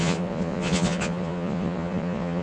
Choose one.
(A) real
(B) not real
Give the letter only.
B